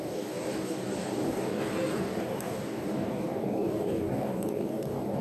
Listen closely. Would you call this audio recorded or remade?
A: remade